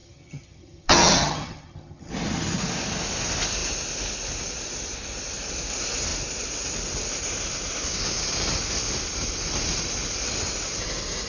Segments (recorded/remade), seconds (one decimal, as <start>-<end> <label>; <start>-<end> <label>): 0.0-2.1 remade; 2.1-11.3 recorded